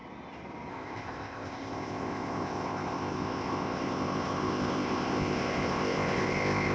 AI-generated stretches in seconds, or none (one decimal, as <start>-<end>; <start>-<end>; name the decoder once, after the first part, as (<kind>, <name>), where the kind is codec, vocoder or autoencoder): 0.7-6.7 (codec, ZipCodec)

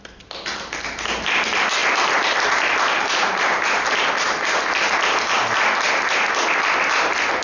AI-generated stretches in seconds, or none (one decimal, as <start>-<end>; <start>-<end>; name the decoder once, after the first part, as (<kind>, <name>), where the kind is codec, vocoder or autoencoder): 1.8-6.2 (vocoder, BigVGAN v2)

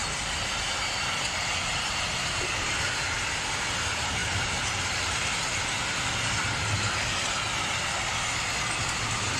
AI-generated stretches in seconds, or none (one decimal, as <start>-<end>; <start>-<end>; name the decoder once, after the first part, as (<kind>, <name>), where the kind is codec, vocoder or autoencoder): none

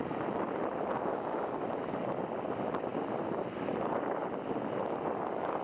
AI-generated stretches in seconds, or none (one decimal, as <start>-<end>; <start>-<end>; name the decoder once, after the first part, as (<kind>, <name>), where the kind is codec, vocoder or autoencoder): 1.1-1.7 (codec, DAC)

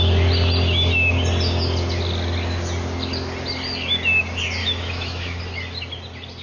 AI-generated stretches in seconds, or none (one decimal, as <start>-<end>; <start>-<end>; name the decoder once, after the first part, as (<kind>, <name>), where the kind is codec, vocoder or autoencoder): 4.6-5.4 (autoencoder, DAC-VAE)